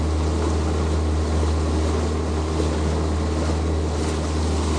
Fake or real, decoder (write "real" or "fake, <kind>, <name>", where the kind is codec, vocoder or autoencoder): real